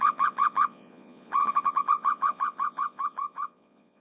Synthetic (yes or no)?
yes